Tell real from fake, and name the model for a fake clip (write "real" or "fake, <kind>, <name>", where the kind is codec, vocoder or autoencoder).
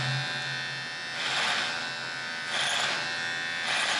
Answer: real